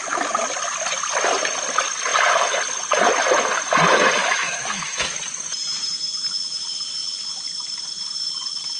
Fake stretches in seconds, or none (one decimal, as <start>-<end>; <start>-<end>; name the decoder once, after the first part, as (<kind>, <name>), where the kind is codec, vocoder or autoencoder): 4.2-5.1 (autoencoder, DAC-VAE)